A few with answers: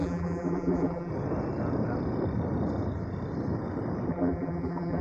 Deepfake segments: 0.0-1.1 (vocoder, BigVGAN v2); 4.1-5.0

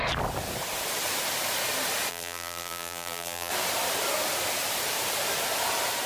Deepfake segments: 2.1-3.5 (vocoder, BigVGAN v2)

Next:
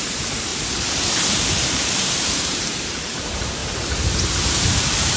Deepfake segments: 0.0-0.5 (vocoder, BigVGAN v2); 1.3-3.6; 4.3-5.2